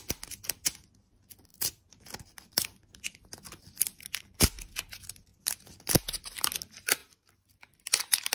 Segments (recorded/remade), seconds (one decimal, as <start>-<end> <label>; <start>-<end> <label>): 0.0-1.5 recorded; 1.5-4.2 remade; 4.2-5.3 recorded; 5.3-5.8 remade; 5.8-8.3 recorded